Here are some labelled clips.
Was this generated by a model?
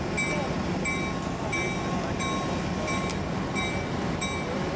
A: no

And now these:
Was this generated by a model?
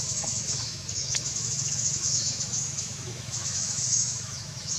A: yes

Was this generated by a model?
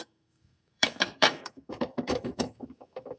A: yes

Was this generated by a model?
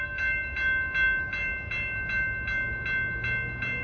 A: no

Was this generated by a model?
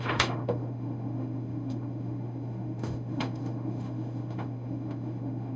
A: yes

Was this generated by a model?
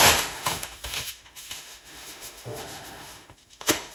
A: yes